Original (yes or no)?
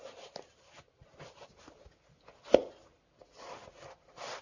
yes